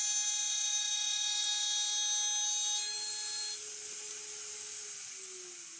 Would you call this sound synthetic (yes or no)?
no